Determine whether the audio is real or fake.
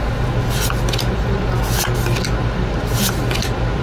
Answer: real